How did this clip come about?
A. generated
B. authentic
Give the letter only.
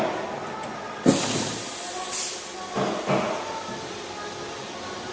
B